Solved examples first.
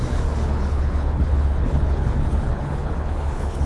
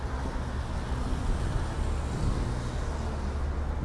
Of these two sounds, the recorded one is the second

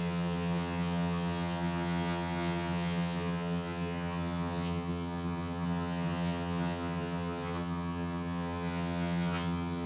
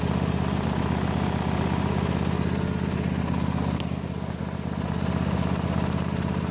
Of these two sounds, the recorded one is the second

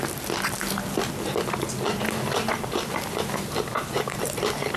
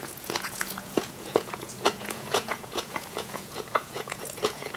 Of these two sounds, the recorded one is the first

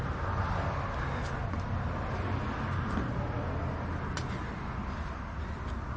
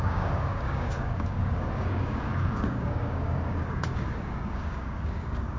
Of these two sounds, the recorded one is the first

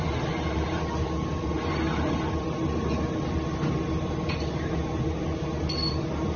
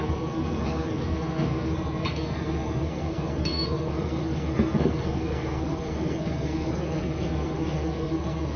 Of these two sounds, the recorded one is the first